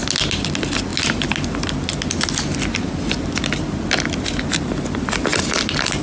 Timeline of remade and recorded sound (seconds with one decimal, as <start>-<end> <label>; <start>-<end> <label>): 0.0-5.3 recorded; 5.3-6.0 remade